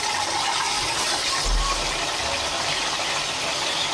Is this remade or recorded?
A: recorded